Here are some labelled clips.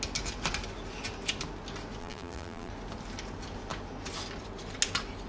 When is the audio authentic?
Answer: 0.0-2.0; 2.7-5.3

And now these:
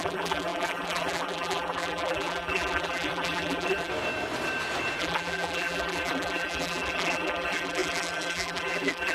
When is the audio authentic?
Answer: 3.9-5.0

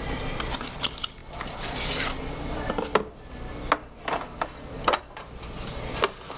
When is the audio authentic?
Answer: 0.0-6.4

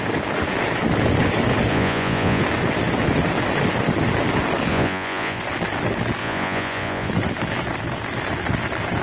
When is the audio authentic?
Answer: 0.0-1.7; 2.4-4.7; 5.4-6.2; 7.1-9.0

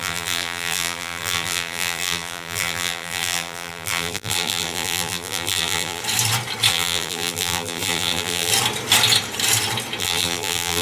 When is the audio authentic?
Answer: 6.0-6.7; 8.5-10.0